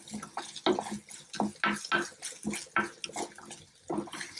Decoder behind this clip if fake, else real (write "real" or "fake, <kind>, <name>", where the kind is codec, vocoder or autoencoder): real